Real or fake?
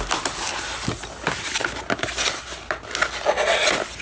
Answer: real